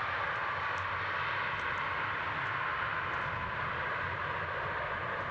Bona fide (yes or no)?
yes